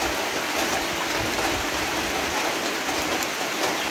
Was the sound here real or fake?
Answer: real